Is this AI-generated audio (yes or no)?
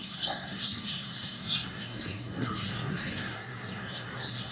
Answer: yes